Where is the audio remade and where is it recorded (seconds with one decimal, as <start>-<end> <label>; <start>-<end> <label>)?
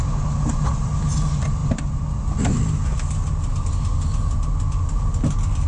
0.0-5.7 recorded